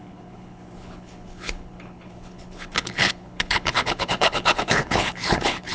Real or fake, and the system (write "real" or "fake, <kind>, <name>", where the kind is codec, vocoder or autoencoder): fake, codec, HILCodec